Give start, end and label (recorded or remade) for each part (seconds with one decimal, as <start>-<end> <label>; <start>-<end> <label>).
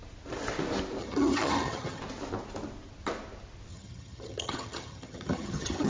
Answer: 0.0-1.0 recorded; 1.0-2.0 remade; 2.0-3.7 recorded; 3.7-5.9 remade